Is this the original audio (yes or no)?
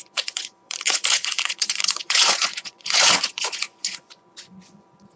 no